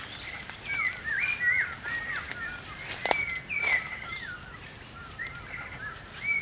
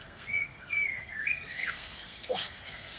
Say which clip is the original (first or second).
first